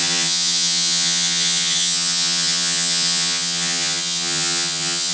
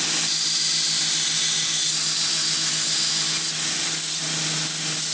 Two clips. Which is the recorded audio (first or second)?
second